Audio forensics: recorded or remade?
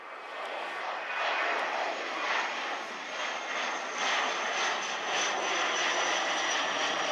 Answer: recorded